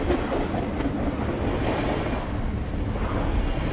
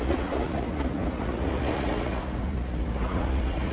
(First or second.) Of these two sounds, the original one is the first